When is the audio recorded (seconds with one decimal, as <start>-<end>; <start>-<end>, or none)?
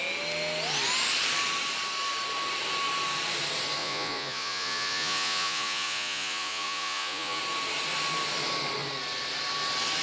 0.0-3.8; 7.4-10.0